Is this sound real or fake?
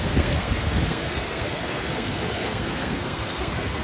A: fake